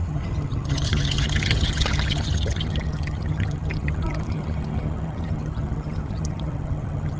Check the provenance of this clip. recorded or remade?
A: remade